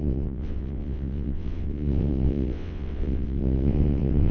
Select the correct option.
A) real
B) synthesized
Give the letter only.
B